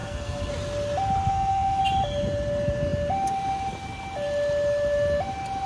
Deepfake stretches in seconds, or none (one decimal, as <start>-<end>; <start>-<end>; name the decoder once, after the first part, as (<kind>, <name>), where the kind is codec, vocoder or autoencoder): 0.0-0.5 (codec, SNAC); 1.3-1.8